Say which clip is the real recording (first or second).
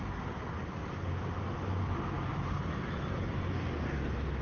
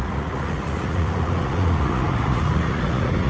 first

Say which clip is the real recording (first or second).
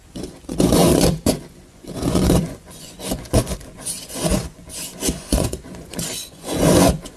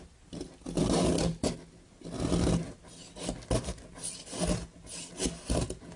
second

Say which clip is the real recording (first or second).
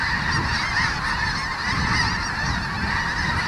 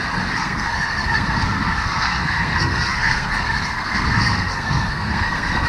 first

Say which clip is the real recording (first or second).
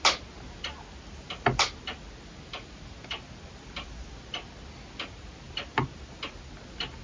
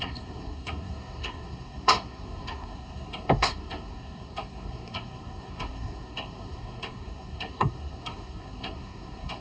first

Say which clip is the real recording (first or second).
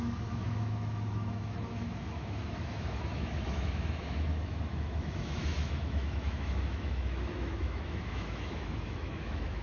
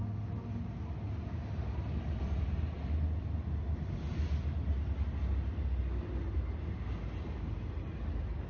second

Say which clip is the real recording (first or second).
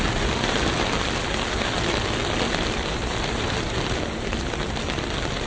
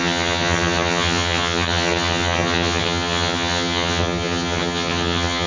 first